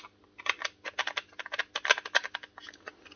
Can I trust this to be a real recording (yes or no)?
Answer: yes